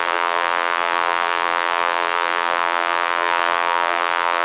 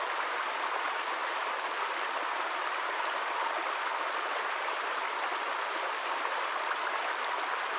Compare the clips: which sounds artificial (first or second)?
first